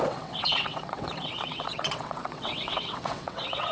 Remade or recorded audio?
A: remade